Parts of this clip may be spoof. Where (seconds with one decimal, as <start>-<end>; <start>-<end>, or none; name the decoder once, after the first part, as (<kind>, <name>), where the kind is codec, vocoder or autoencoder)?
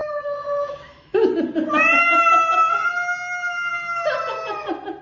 0.0-1.3 (autoencoder, DAC-VAE)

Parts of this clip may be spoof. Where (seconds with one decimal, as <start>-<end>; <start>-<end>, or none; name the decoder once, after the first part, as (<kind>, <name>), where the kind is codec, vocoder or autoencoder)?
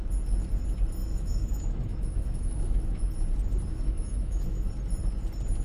1.0-3.0 (autoencoder, DAC-VAE); 3.7-4.7